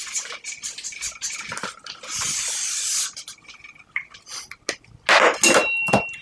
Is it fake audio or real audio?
real